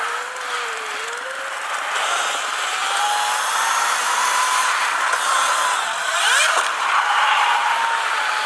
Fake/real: real